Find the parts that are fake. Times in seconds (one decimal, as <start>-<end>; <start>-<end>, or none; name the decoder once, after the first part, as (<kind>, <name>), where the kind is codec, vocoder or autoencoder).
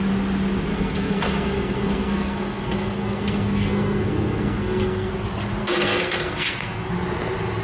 0.7-5.1 (codec, SNAC); 5.6-6.9